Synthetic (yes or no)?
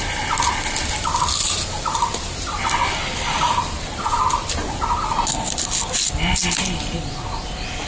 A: no